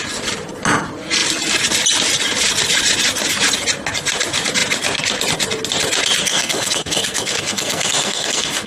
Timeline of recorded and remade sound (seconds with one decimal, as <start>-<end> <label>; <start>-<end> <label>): 0.0-6.2 recorded; 6.2-8.7 remade